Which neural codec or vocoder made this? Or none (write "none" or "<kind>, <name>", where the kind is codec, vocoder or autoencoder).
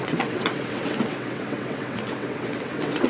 vocoder, WaveNeXt